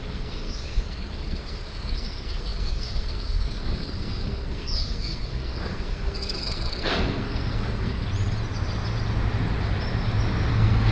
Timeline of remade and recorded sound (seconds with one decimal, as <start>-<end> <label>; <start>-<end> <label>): 0.0-8.0 remade; 8.0-10.5 recorded; 10.5-10.9 remade